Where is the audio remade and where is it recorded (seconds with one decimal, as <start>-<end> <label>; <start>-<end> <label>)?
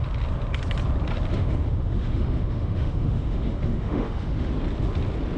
0.0-1.3 recorded; 1.3-4.5 remade; 4.5-5.4 recorded